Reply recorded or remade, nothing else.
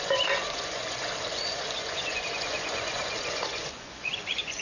remade